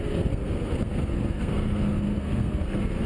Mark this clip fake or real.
fake